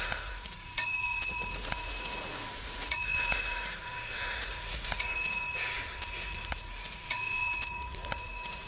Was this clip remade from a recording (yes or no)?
yes